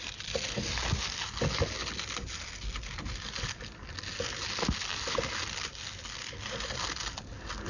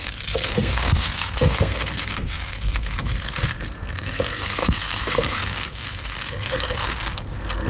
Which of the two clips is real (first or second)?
first